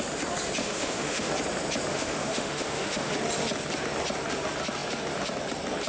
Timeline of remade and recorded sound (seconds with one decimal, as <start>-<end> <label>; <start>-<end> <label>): 0.0-0.6 recorded; 0.6-1.3 remade; 1.3-1.9 recorded; 1.9-3.1 remade; 3.1-5.9 recorded